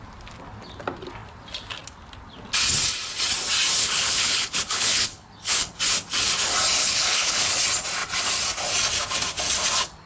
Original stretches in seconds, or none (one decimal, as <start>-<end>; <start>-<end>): 0.0-3.8; 5.8-6.8; 7.6-10.1